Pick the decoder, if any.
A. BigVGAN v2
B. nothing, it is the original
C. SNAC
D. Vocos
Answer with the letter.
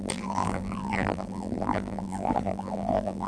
A